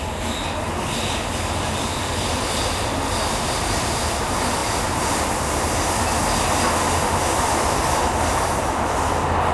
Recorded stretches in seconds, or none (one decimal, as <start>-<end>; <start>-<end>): 0.0-9.5